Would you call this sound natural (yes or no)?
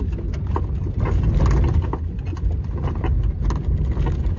yes